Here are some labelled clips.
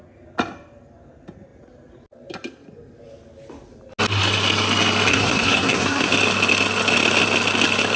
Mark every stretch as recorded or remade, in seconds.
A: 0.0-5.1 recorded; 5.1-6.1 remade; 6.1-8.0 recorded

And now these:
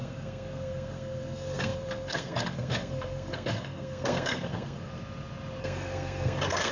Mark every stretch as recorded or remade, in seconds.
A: 0.0-4.9 remade; 4.9-5.6 recorded; 5.6-6.7 remade

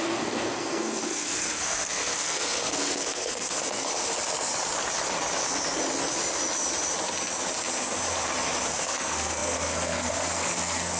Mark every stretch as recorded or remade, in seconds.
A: 0.0-3.9 remade; 3.9-8.8 recorded; 8.8-11.0 remade

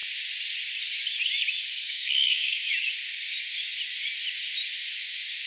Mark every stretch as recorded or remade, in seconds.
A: 0.0-1.8 recorded; 1.8-2.7 remade; 2.7-5.5 recorded

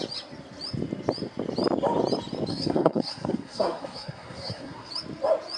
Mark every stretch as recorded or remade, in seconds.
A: 0.0-2.5 recorded; 2.5-4.9 remade; 4.9-5.6 recorded